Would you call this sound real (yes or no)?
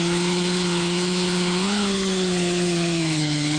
no